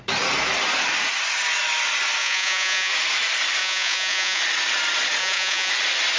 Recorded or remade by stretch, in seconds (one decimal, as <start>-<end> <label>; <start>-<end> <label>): 0.0-2.2 recorded; 2.2-2.9 remade; 2.9-3.6 recorded; 3.6-4.4 remade; 4.4-5.2 recorded; 5.2-5.7 remade; 5.7-6.2 recorded